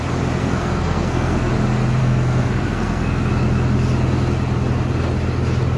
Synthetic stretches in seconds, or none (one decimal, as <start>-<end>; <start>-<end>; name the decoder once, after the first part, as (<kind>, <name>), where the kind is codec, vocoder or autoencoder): 0.4-1.5 (codec, SNAC); 2.0-3.3